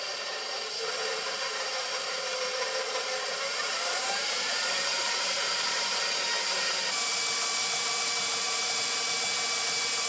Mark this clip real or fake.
fake